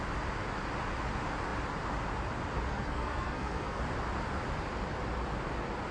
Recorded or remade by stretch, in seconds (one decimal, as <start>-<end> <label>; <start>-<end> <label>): 0.0-2.7 recorded; 2.7-3.8 remade; 3.8-5.9 recorded